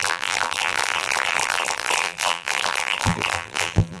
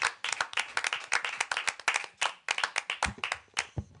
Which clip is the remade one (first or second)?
first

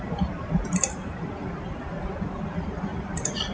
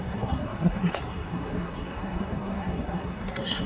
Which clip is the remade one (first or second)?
second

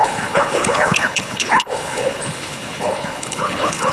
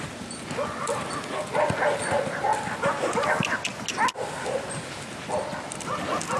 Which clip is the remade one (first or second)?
first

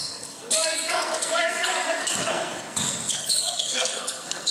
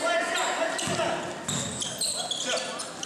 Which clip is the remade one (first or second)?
first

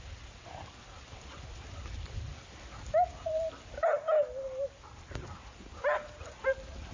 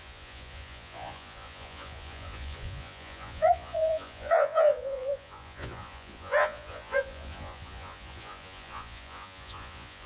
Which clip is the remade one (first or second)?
second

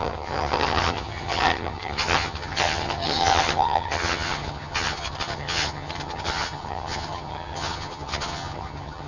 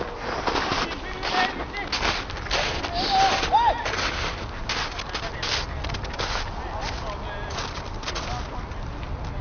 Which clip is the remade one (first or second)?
first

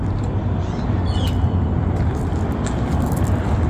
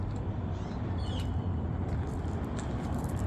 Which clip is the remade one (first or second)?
second